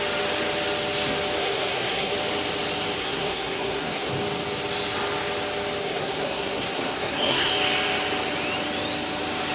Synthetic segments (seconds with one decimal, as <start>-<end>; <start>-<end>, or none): 1.4-2.1; 3.0-4.1; 5.8-7.5